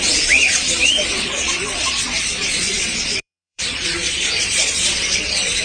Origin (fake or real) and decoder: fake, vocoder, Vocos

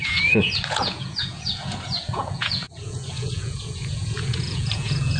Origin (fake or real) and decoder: fake, vocoder, Vocos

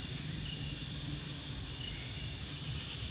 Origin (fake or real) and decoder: real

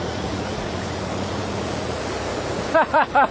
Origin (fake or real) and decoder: fake, vocoder, Vocos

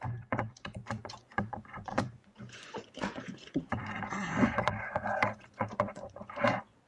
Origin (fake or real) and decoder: fake, vocoder, Vocos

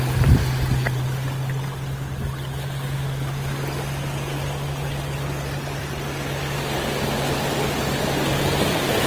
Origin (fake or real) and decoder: real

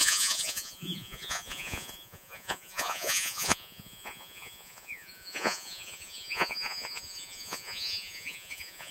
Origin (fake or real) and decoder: fake, vocoder, Vocos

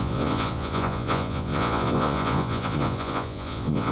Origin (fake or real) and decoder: fake, vocoder, Vocos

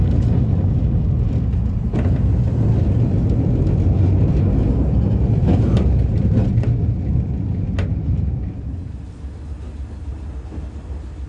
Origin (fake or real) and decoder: real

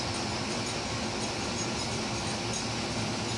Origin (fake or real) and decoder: real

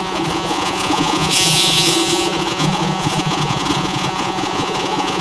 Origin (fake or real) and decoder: fake, vocoder, Vocos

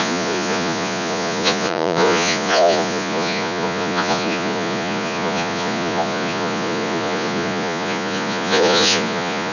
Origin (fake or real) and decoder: fake, vocoder, Vocos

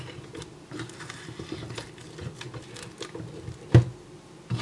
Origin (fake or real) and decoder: real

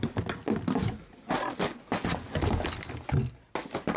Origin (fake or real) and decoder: real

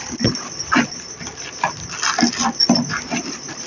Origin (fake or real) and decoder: real